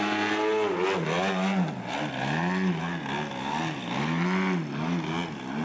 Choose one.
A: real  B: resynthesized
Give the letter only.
A